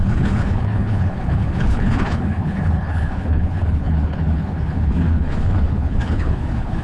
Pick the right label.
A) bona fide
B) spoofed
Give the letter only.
B